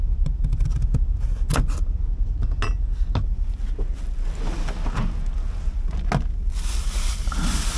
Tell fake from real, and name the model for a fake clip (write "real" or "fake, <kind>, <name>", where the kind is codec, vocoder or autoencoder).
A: real